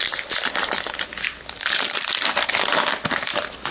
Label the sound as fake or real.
real